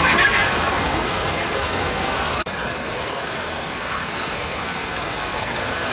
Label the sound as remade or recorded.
remade